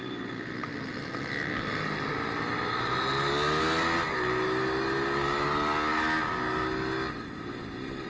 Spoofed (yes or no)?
no